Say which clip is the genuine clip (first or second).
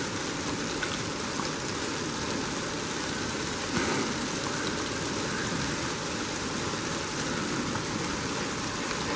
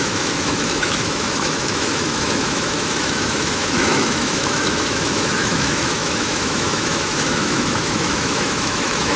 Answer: first